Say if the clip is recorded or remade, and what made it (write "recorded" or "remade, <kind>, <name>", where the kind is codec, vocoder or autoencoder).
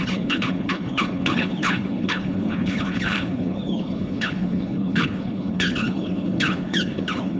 remade, codec, HILCodec